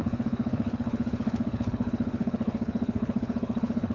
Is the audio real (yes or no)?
no